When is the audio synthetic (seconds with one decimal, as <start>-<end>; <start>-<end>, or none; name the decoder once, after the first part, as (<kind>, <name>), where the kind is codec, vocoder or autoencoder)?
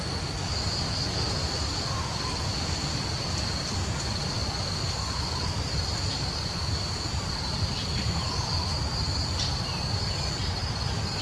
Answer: none